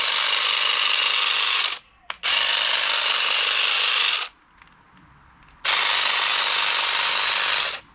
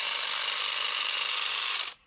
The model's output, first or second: second